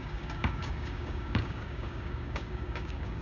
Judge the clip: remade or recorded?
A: remade